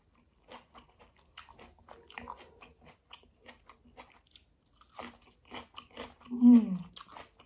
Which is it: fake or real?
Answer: real